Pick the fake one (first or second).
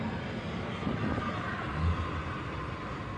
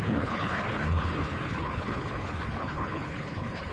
second